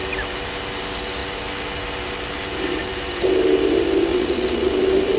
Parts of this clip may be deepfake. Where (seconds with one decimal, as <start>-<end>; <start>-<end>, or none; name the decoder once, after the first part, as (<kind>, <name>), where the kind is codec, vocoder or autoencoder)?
4.1-4.7 (vocoder, Vocos)